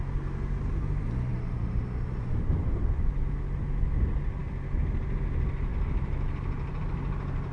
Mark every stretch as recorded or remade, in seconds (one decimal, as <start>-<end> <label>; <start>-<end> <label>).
0.0-1.3 recorded; 1.3-3.1 remade; 3.1-7.5 recorded